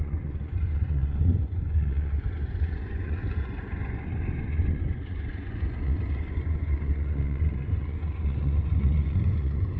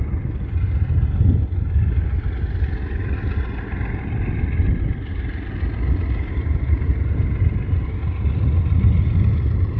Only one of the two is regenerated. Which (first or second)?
first